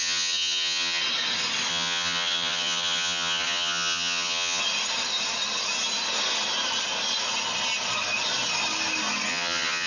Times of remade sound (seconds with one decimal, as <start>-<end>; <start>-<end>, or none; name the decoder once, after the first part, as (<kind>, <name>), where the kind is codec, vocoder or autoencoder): 0.0-1.0 (vocoder, HiFi-GAN); 1.7-4.6; 9.3-9.9